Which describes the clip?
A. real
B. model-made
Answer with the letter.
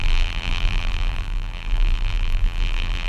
B